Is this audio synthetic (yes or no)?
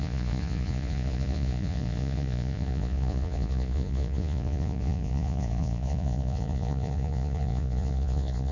yes